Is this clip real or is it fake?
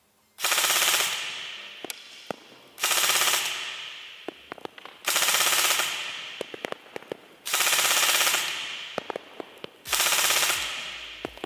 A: real